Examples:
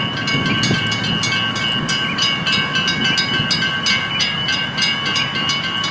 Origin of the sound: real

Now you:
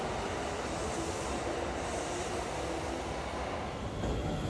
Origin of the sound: real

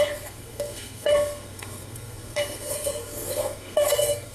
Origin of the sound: fake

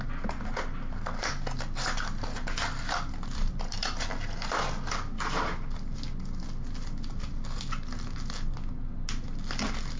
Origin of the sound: real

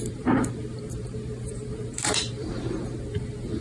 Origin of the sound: fake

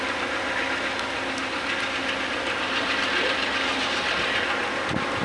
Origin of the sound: real